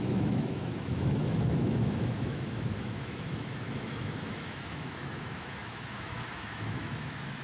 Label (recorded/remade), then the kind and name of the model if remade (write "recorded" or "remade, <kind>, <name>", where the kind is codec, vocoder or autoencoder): remade, autoencoder, DAC-VAE